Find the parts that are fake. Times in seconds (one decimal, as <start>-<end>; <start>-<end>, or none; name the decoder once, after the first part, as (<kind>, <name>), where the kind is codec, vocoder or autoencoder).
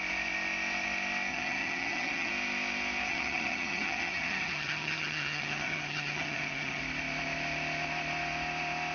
1.3-2.3 (vocoder, HiFi-GAN); 3.1-6.8